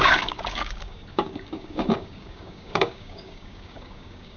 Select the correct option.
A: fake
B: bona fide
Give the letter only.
A